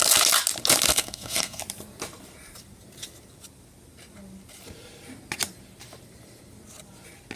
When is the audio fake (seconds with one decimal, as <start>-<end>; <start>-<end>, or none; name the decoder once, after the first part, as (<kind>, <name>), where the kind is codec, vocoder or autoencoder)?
0.9-1.6 (codec, SNAC)